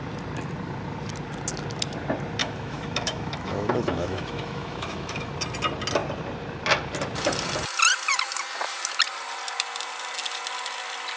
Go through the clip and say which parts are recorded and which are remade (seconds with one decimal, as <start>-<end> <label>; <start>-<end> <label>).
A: 0.0-2.4 recorded; 2.4-5.3 remade; 5.3-11.2 recorded